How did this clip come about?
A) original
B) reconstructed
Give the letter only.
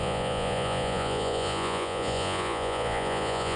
B